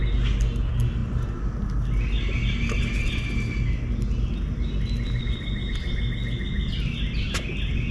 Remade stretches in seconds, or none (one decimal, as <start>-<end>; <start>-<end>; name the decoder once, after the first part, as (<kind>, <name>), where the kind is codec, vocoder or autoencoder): none